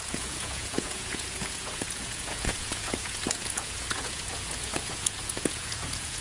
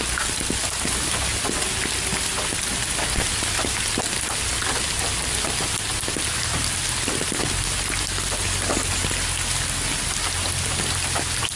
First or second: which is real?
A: second